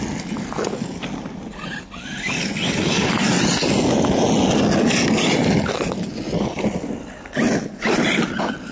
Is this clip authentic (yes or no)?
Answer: yes